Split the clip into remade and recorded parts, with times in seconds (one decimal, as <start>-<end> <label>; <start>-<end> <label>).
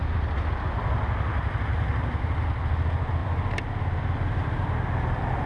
0.0-5.5 recorded